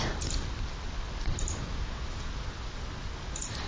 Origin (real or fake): real